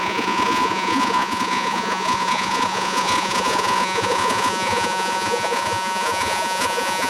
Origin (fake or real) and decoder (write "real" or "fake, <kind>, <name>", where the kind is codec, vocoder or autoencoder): fake, vocoder, Vocos